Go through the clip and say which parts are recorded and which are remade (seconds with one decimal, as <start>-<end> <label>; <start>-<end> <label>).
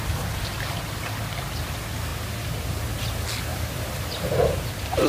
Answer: 0.0-2.1 recorded; 2.1-3.0 remade; 3.0-3.5 recorded; 3.5-5.1 remade